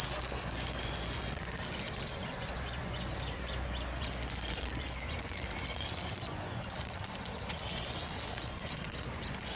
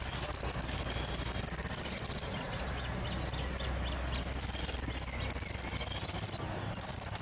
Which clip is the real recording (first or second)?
second